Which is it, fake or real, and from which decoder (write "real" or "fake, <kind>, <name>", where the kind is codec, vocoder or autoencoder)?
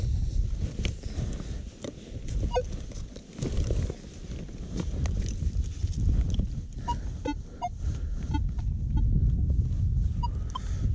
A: real